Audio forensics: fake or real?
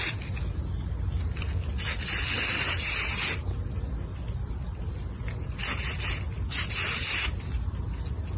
real